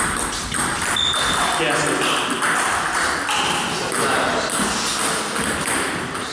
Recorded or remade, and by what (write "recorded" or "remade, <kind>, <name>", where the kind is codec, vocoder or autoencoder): recorded